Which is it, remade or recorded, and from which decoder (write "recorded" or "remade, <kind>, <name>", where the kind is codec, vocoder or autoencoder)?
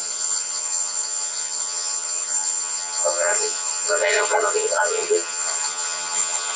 remade, vocoder, HiFi-GAN